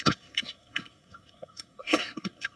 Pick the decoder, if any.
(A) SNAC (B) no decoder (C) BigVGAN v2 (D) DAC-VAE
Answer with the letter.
A